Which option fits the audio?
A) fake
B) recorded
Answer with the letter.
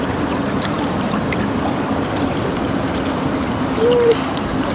A